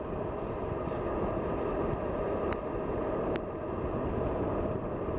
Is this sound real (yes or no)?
yes